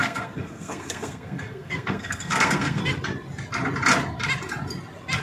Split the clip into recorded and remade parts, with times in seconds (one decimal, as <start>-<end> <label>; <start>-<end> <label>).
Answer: 0.0-2.8 remade; 2.8-5.2 recorded